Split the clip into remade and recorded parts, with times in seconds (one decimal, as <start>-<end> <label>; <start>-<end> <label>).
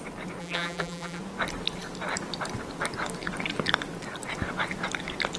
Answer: 0.0-0.4 recorded; 0.4-1.2 remade; 1.2-5.4 recorded